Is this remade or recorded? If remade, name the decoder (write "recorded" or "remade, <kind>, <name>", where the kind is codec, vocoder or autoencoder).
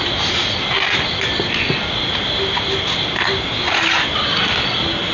recorded